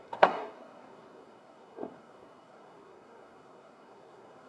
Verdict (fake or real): fake